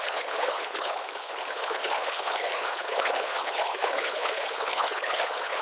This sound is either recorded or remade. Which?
remade